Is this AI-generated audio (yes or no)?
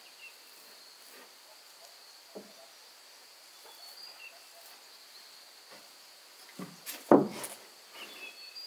no